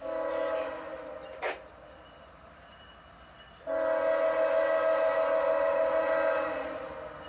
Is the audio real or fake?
real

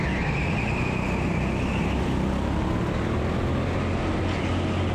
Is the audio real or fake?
real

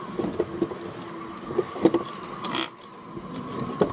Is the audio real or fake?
real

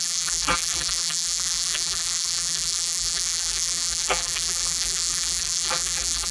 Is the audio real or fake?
fake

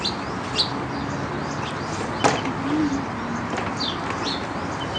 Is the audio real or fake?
real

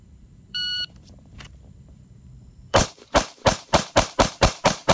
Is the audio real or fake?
fake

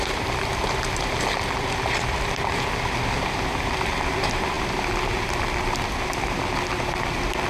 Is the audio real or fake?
real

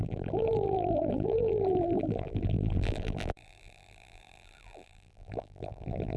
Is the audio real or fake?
fake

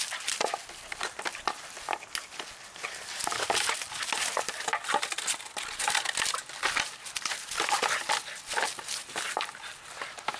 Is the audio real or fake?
real